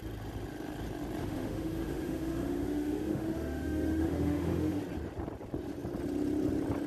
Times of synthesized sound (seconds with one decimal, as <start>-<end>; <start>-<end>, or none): 1.2-4.8